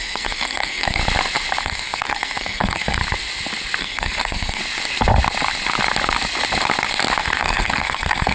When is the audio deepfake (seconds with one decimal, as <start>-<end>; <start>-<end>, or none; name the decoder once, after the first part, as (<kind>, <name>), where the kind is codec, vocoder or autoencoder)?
0.0-1.0 (codec, SNAC); 1.6-3.0; 3.8-4.6; 7.2-8.3